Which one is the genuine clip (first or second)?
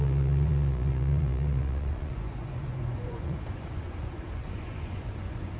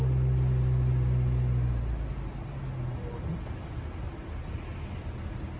second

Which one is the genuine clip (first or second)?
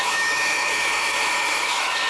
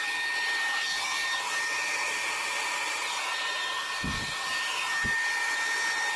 second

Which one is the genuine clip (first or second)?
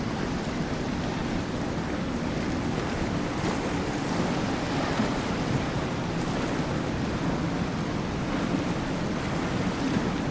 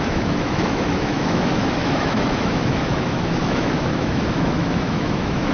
first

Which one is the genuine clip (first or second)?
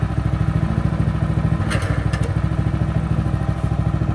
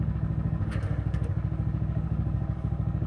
first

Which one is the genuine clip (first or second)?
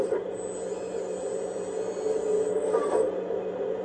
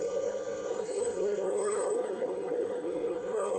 first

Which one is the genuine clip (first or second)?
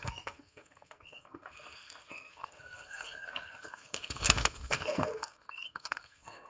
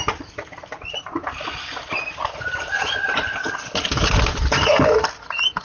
second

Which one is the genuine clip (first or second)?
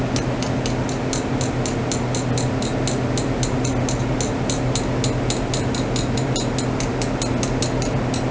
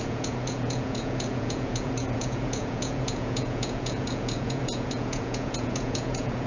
first